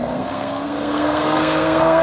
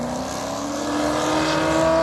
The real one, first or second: second